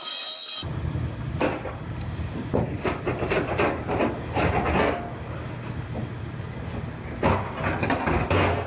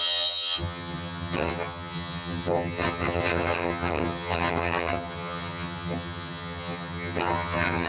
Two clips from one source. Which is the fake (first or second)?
second